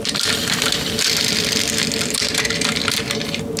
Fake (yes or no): no